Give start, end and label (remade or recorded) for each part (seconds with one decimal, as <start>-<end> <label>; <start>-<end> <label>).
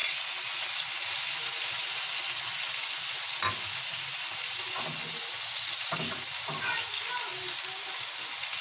0.0-8.6 recorded